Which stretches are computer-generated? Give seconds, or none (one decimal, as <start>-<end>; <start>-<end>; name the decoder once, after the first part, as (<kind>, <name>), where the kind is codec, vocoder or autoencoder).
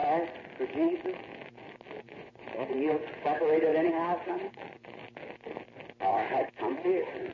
2.0-5.0 (vocoder, Vocos); 6.6-7.3